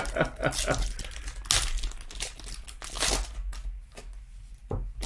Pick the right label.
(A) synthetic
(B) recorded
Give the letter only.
B